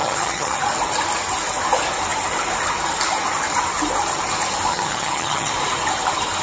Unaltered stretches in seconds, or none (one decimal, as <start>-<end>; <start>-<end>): 0.6-4.7; 5.5-6.4